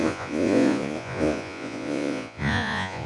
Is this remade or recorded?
remade